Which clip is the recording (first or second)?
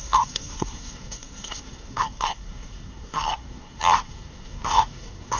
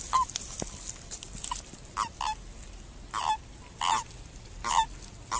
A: second